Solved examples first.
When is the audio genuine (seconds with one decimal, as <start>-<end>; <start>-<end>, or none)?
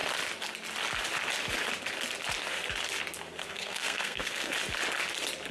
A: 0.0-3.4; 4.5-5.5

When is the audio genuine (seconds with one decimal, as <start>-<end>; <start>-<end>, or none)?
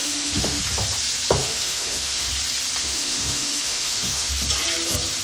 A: 0.6-1.4; 2.3-2.8; 4.3-5.2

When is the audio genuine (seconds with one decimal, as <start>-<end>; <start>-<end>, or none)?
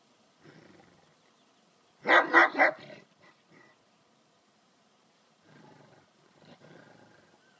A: 0.0-2.4; 6.6-7.6